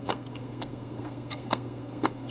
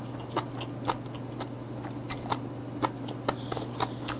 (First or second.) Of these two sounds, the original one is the second